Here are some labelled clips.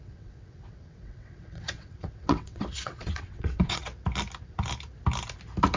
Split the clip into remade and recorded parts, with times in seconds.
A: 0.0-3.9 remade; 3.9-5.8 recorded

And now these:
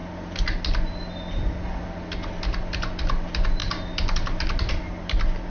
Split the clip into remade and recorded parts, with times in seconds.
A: 0.0-5.5 recorded

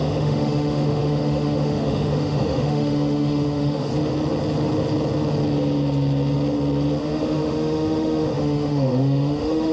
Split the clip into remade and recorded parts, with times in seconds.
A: 0.0-3.9 remade; 3.9-7.0 recorded; 7.0-9.7 remade

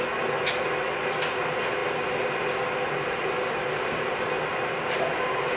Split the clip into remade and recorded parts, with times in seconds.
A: 0.0-5.6 recorded

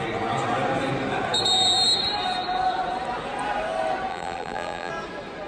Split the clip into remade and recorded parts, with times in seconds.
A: 0.0-4.1 recorded; 4.1-4.9 remade; 4.9-5.5 recorded

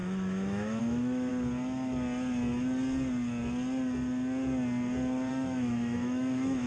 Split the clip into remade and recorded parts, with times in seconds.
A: 0.0-1.3 remade; 1.3-5.3 recorded; 5.3-6.7 remade

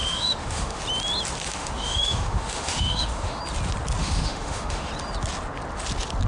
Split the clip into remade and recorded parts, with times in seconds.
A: 0.0-0.8 remade; 0.8-1.5 recorded; 1.5-3.4 remade; 3.4-4.0 recorded; 4.0-4.9 remade; 4.9-6.3 recorded

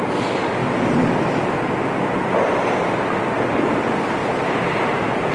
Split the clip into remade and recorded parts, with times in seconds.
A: 0.0-5.3 recorded